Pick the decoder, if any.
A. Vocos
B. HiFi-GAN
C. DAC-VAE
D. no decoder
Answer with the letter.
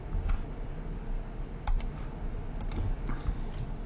D